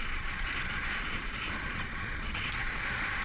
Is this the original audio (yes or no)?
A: no